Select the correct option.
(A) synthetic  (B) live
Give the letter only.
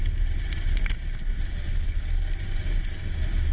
B